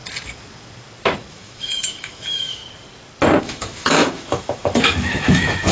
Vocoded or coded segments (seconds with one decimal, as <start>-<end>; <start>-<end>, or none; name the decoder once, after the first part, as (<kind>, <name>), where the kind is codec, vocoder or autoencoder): 1.3-2.6 (autoencoder, DAC-VAE); 3.4-5.7